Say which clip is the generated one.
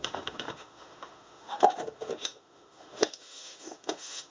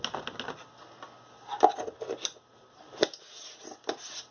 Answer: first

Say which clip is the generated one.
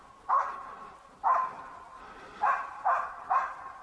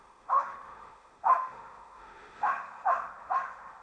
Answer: second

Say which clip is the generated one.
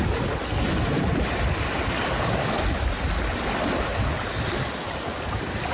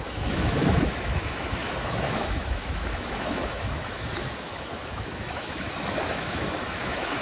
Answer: second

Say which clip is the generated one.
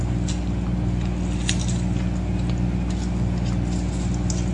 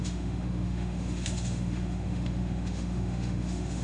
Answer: second